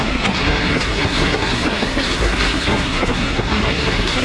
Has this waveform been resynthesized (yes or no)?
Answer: yes